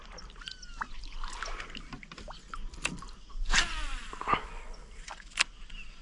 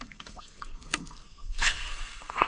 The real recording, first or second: first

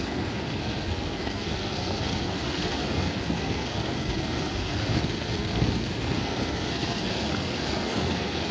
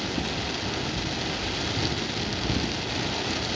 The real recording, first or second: second